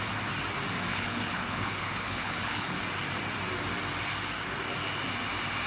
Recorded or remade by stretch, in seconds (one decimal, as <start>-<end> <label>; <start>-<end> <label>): 0.0-0.9 recorded; 0.9-2.8 remade; 2.8-5.7 recorded